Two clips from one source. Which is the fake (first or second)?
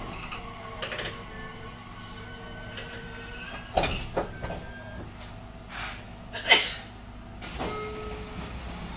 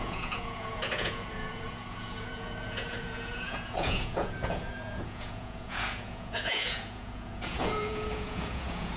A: second